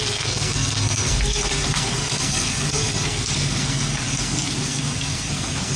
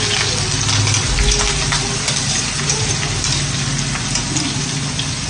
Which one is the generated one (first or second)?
first